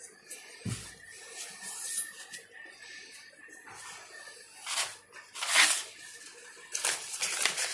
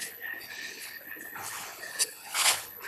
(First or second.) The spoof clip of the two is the second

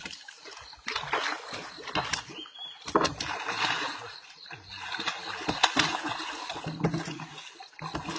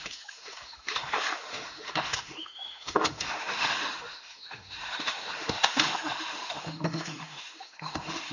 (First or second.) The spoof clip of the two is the second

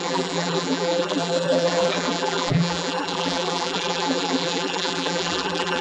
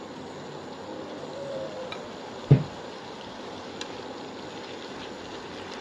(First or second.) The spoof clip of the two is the first